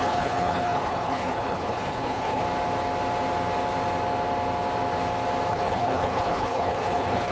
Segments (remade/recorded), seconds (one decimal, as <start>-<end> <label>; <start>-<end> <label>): 0.0-2.4 remade; 2.4-5.5 recorded; 5.5-7.3 remade